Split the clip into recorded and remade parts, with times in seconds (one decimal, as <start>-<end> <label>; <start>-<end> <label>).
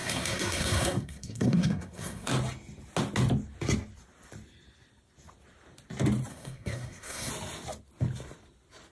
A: 0.0-2.3 remade; 2.3-6.3 recorded; 6.3-7.3 remade; 7.3-8.9 recorded